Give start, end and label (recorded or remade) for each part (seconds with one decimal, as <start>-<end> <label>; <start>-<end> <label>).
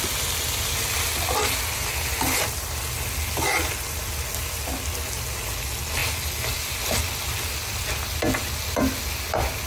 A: 0.0-9.7 recorded